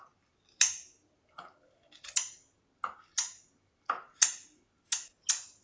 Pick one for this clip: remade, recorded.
recorded